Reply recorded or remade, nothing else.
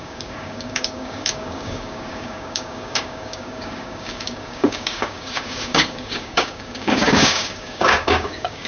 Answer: remade